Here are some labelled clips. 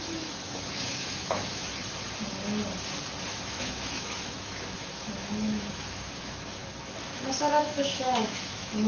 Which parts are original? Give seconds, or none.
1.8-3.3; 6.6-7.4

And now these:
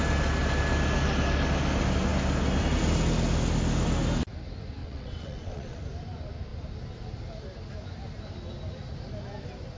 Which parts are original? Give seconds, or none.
0.0-4.8; 5.8-9.8

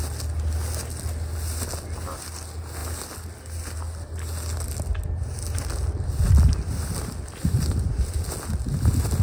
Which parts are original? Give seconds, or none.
0.0-9.2

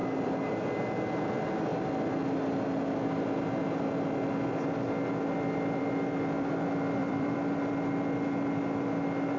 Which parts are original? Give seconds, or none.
0.5-7.0; 7.7-9.4

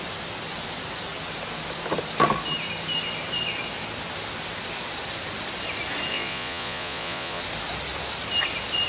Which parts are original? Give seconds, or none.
0.0-6.1; 7.4-8.9

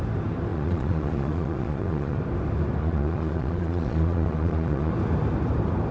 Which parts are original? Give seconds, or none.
0.0-0.5; 2.2-2.8; 4.9-5.9

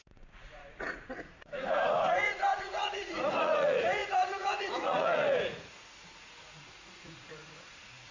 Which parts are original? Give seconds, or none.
none